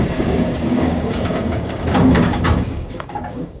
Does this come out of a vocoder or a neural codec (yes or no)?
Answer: yes